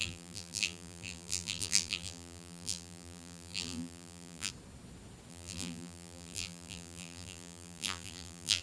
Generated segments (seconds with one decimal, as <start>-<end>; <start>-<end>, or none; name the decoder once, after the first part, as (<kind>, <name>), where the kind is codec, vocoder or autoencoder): 0.0-4.5 (vocoder, BigVGAN v2); 5.3-8.6